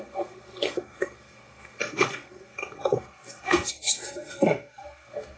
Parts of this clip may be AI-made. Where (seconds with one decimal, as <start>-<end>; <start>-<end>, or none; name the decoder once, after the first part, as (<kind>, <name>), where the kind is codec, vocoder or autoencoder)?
0.0-5.4 (codec, SNAC)